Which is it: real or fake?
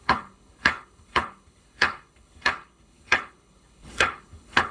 fake